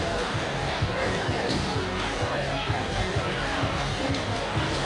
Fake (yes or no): yes